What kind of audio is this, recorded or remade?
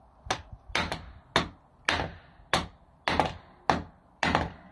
recorded